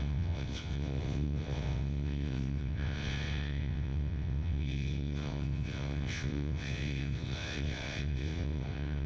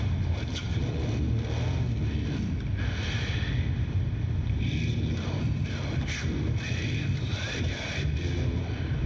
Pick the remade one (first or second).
first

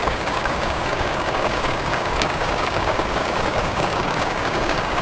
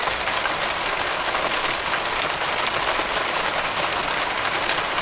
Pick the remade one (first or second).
first